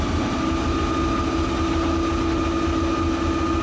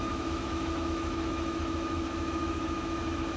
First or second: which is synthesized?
second